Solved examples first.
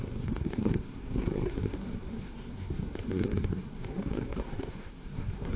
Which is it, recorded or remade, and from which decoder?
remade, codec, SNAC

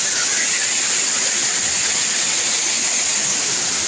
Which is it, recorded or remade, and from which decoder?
recorded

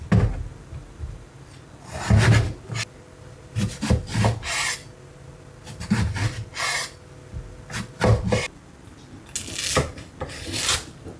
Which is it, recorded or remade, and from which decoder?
recorded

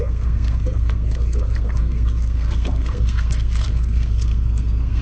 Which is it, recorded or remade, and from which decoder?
remade, codec, SNAC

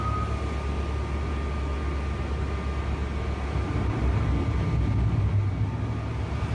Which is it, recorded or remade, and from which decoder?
recorded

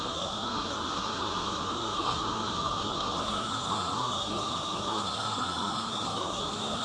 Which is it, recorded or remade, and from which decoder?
remade, codec, SNAC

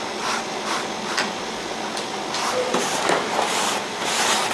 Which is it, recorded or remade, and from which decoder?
recorded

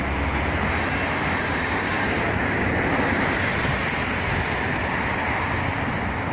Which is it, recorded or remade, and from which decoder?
recorded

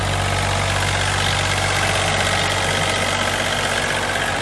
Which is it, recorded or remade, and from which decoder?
recorded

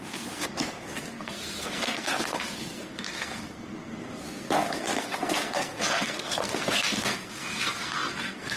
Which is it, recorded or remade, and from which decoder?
remade, codec, SNAC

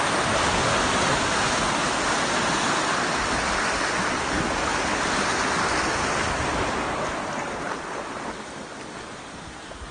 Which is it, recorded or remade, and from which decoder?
recorded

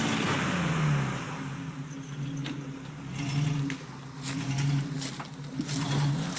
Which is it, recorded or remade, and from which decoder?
recorded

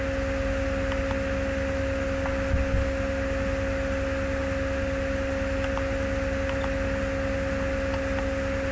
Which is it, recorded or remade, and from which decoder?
recorded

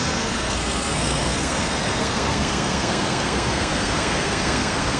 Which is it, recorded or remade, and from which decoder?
remade, codec, SNAC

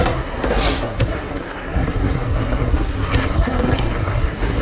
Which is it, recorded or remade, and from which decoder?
remade, codec, SNAC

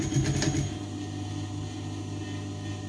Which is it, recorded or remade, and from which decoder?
recorded